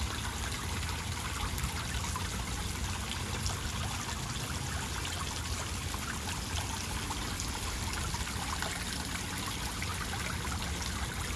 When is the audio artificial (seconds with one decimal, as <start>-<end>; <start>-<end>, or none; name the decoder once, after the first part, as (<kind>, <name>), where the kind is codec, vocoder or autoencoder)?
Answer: none